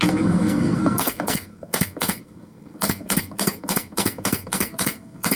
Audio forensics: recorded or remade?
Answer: remade